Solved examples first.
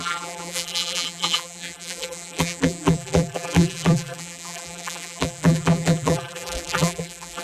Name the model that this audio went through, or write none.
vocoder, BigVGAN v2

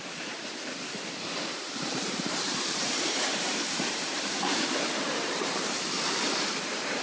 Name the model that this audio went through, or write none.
vocoder, BigVGAN v2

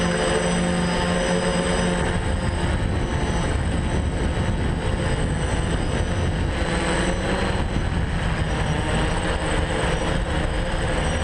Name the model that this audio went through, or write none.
none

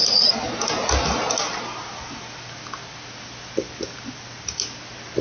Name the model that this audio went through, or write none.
none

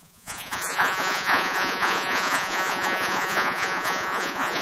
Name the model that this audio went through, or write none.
vocoder, Vocos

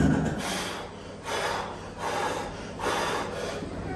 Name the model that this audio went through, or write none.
none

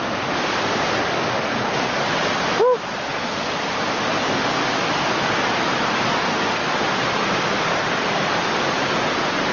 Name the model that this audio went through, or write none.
none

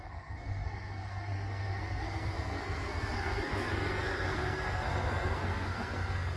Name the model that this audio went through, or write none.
codec, SNAC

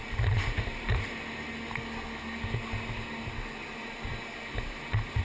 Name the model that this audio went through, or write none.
none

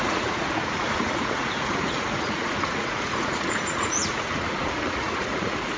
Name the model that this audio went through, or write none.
vocoder, Vocos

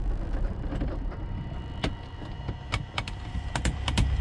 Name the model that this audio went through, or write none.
vocoder, BigVGAN v2